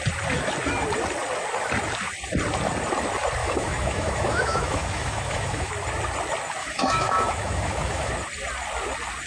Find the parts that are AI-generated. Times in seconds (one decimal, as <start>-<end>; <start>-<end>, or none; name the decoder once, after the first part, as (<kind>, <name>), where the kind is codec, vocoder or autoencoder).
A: 3.4-5.7 (autoencoder, DAC-VAE); 6.6-8.1